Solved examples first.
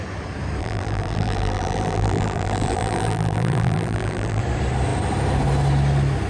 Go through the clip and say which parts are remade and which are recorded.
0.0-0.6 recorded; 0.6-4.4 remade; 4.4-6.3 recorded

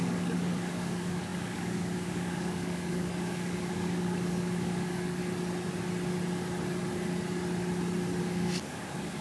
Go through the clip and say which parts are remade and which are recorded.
0.0-5.2 remade; 5.2-8.2 recorded; 8.2-9.2 remade